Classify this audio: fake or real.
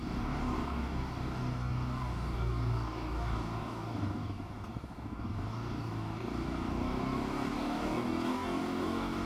fake